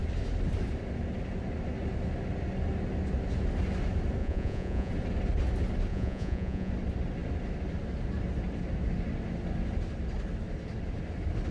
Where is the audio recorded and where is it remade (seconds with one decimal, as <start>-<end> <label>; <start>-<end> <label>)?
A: 0.0-4.2 recorded; 4.2-4.9 remade; 4.9-5.9 recorded; 5.9-6.7 remade; 6.7-11.5 recorded